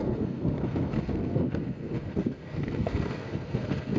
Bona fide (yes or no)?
no